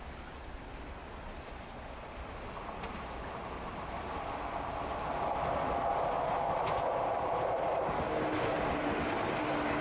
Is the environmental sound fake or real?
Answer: real